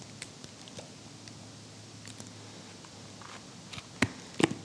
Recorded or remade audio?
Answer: recorded